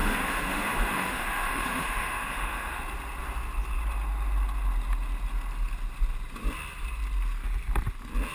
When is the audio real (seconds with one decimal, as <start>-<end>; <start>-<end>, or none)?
2.8-8.3